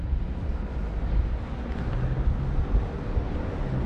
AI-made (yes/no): no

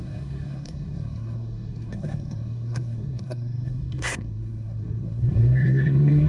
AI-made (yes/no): yes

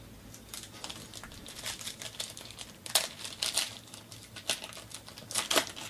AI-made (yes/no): no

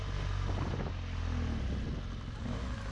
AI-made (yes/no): no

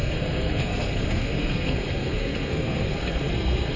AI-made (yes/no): yes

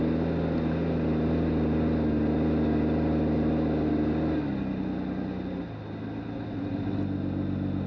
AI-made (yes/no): no